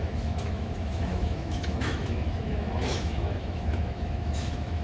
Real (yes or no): no